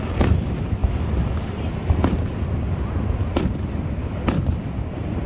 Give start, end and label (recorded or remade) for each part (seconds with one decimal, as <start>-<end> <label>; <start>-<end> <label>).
0.0-0.8 recorded; 0.8-1.3 remade; 1.3-5.3 recorded